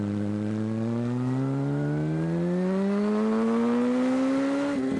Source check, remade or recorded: recorded